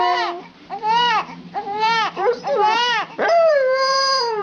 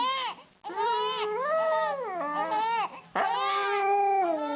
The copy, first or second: first